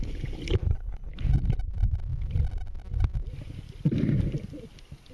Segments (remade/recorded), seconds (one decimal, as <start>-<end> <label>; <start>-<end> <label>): 0.0-0.6 recorded; 0.6-1.1 remade; 1.1-5.1 recorded